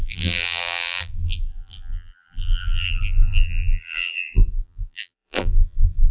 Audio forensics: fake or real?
fake